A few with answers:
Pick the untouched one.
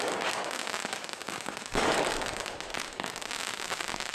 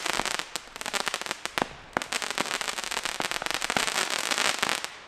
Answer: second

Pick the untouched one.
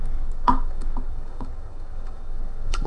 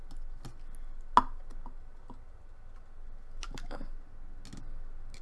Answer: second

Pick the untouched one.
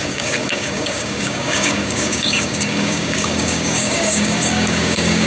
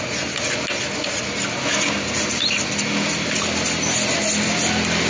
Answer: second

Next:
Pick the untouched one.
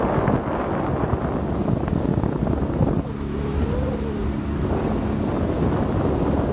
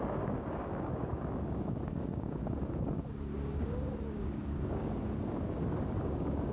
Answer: first